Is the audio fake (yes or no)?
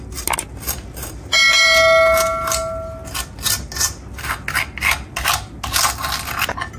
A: no